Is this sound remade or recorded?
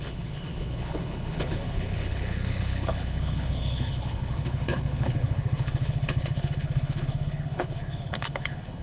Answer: remade